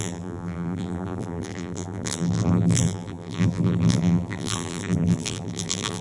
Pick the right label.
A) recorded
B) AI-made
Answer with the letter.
B